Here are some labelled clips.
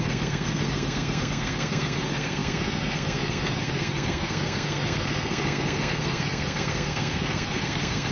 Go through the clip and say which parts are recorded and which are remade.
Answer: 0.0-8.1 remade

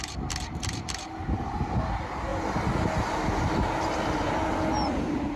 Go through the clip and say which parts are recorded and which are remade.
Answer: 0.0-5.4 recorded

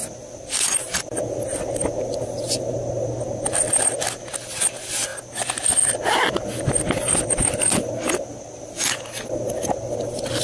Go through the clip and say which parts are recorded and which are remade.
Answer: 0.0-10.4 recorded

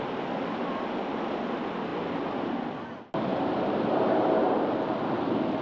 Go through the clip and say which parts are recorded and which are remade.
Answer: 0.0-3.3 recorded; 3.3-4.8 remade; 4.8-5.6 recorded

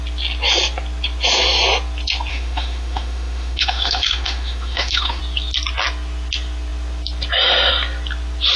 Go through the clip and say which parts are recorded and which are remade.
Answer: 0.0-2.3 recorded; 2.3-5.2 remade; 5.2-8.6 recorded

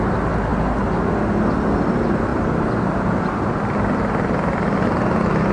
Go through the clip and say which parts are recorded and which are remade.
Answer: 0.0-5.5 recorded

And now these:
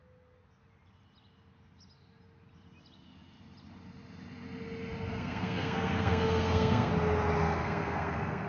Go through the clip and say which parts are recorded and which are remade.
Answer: 0.0-5.1 recorded; 5.1-6.9 remade; 6.9-7.4 recorded; 7.4-8.5 remade

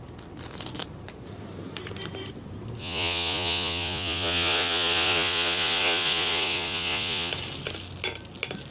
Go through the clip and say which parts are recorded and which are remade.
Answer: 0.0-2.8 recorded; 2.8-7.3 remade; 7.3-8.7 recorded